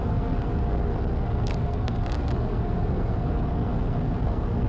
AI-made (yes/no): yes